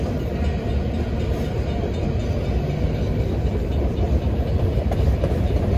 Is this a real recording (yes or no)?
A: yes